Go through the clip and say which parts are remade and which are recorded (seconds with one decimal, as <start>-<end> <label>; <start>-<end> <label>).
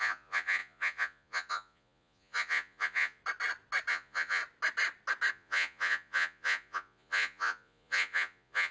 0.0-3.2 remade; 3.2-3.9 recorded; 3.9-4.4 remade; 4.4-5.3 recorded; 5.3-8.7 remade